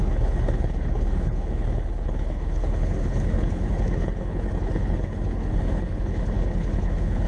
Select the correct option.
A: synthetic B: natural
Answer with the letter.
A